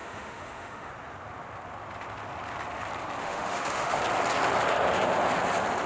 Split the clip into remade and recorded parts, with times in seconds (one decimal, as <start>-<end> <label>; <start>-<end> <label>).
0.0-0.9 remade; 0.9-3.2 recorded; 3.2-4.0 remade; 4.0-5.9 recorded

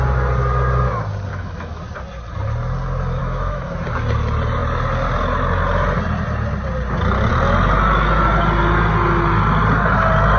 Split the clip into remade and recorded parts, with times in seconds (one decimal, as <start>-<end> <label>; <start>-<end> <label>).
0.0-1.3 recorded; 1.3-1.8 remade; 1.8-3.2 recorded; 3.2-3.7 remade; 3.7-10.4 recorded

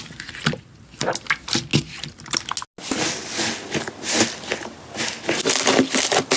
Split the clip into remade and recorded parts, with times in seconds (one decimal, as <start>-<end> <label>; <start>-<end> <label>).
0.0-6.4 recorded

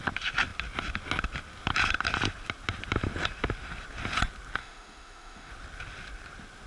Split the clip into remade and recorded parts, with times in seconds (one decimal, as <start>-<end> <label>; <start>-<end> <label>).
0.0-4.6 recorded; 4.6-5.5 remade; 5.5-6.7 recorded

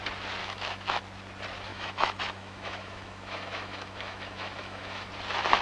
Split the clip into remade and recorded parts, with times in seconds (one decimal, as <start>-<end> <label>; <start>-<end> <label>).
0.0-0.4 recorded; 0.4-1.0 remade; 1.0-1.7 recorded; 1.7-5.1 remade; 5.1-5.6 recorded

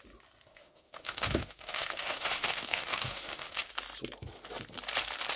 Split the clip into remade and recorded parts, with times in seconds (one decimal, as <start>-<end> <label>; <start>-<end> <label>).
0.0-0.5 recorded; 0.5-3.7 remade; 3.7-5.4 recorded

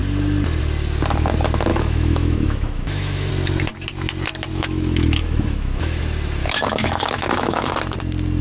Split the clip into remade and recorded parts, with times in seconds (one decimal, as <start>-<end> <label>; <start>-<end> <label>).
0.0-1.7 recorded; 1.7-3.3 remade; 3.3-4.5 recorded; 4.5-6.0 remade; 6.0-6.4 recorded; 6.4-7.7 remade; 7.7-8.4 recorded

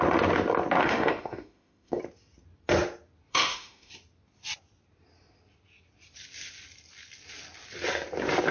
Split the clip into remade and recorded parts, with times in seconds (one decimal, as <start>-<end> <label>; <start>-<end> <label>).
0.0-0.8 recorded; 0.8-2.0 remade; 2.0-3.3 recorded; 3.3-3.9 remade; 3.9-8.5 recorded